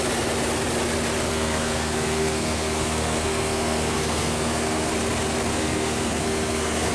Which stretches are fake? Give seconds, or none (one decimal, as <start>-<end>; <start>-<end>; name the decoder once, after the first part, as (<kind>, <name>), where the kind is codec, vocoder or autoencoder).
1.3-4.9 (codec, SNAC); 5.5-6.9